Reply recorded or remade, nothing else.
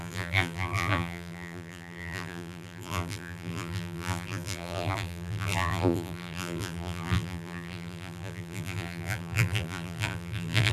remade